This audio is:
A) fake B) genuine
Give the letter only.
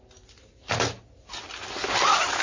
B